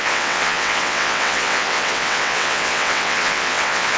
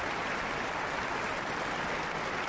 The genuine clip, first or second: second